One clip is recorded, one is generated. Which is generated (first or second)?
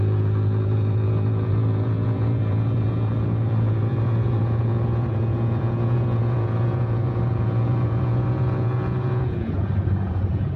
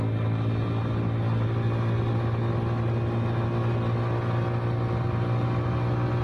first